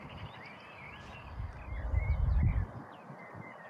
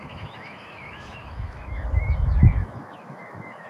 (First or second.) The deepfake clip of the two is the second